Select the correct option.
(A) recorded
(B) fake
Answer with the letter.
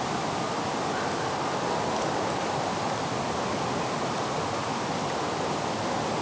A